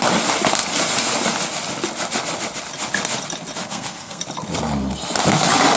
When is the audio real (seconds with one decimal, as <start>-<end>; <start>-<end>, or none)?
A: 0.0-3.6; 4.2-5.8